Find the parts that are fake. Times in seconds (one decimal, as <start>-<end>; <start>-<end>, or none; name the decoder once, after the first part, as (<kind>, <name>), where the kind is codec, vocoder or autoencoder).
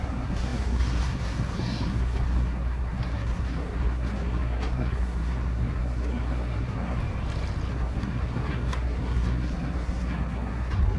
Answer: 0.0-7.0 (codec, SNAC); 7.7-11.0